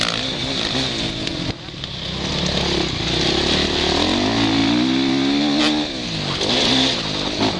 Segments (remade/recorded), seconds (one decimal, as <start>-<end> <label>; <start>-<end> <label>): 0.0-7.6 recorded